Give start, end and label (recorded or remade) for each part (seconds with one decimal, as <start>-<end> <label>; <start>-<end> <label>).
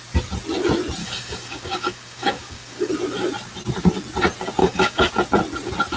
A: 0.0-1.0 recorded; 1.0-2.9 remade; 2.9-4.6 recorded; 4.6-5.1 remade; 5.1-6.0 recorded